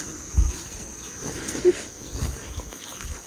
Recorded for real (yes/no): no